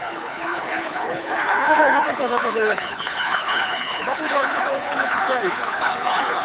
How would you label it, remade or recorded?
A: remade